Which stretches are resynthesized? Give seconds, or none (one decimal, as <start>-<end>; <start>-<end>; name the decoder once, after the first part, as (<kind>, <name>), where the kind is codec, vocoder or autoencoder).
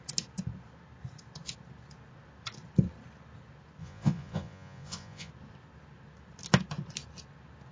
3.8-5.3 (vocoder, Vocos)